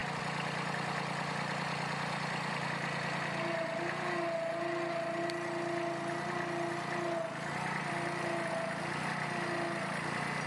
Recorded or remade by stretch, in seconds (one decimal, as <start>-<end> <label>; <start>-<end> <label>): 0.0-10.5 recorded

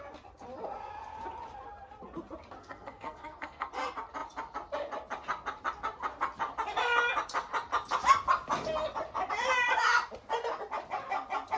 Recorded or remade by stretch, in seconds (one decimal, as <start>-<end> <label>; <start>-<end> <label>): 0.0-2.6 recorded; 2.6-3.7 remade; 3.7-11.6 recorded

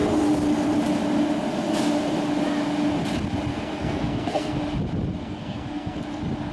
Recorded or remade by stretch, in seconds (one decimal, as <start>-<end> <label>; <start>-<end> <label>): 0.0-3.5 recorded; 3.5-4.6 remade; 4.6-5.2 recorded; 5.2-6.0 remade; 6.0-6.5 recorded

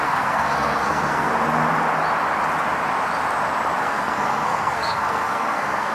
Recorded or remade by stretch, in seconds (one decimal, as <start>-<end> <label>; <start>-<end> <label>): 0.0-1.3 remade; 1.3-3.8 recorded; 3.8-5.9 remade